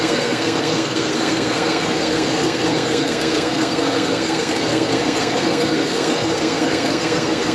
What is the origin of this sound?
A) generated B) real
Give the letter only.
A